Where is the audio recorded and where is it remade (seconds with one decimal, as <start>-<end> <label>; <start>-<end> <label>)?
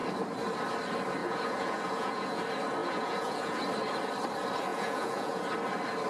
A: 0.0-1.2 recorded; 1.2-2.4 remade; 2.4-2.8 recorded; 2.8-3.6 remade; 3.6-4.7 recorded; 4.7-5.4 remade; 5.4-6.1 recorded